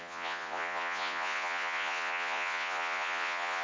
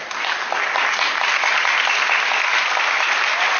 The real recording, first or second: second